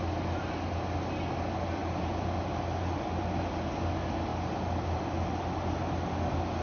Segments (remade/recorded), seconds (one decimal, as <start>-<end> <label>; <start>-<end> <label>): 0.0-6.6 recorded